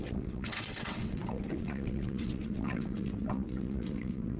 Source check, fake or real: fake